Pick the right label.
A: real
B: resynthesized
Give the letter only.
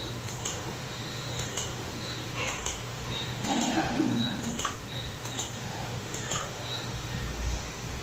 B